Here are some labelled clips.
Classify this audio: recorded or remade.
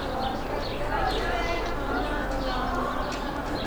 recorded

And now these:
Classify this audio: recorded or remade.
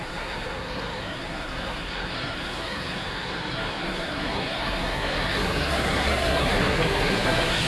remade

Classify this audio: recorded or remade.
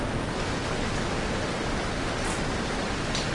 recorded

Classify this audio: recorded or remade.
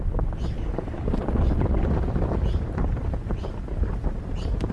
recorded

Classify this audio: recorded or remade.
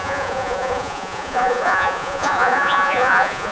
remade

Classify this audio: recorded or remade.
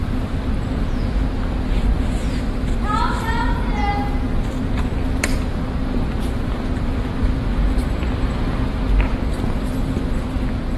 recorded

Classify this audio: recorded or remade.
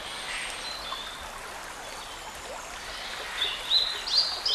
recorded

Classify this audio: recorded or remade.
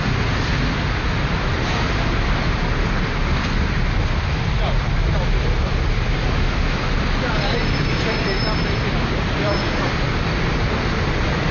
recorded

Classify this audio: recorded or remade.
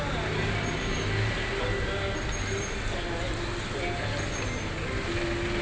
recorded